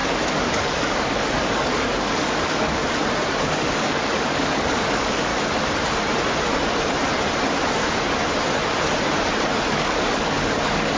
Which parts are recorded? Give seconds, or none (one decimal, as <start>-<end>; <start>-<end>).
2.8-3.3; 5.3-9.7